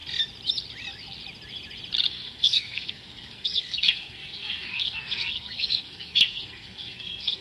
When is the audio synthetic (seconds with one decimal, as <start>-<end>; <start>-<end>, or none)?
2.1-7.4